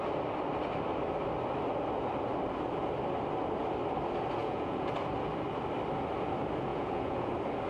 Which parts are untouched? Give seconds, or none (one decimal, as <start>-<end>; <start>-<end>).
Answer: 0.0-4.4; 4.9-6.7; 7.3-7.7